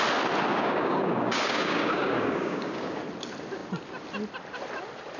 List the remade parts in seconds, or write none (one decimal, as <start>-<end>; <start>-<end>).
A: 0.5-3.0